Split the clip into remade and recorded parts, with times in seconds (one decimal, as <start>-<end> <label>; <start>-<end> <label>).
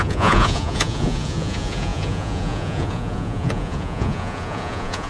0.0-5.1 remade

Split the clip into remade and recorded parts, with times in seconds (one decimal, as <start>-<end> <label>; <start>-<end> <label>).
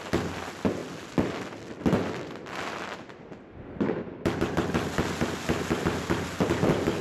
0.0-7.0 recorded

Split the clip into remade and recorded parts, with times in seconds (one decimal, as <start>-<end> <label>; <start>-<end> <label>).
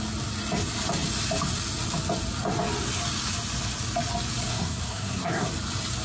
0.0-4.5 recorded; 4.5-5.5 remade; 5.5-6.0 recorded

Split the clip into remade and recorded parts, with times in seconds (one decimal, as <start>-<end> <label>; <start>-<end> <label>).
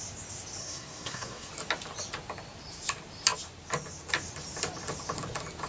0.0-0.6 recorded; 0.6-1.5 remade; 1.5-5.7 recorded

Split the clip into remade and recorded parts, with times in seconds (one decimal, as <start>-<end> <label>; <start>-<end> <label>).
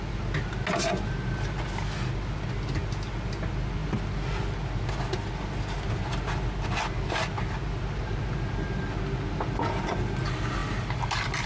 0.0-11.5 recorded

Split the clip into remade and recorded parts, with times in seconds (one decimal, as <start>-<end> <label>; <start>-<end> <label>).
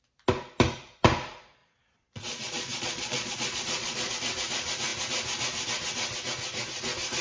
0.0-1.6 recorded; 1.6-4.1 remade; 4.1-7.2 recorded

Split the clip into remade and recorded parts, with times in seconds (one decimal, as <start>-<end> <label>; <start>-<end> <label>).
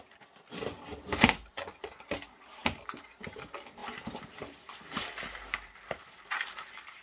0.0-3.8 recorded; 3.8-6.2 remade; 6.2-7.0 recorded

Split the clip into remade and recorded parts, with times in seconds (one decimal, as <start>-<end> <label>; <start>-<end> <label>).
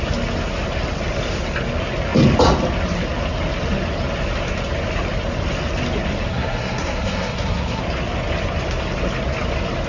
0.0-6.3 recorded; 6.3-7.8 remade; 7.8-9.9 recorded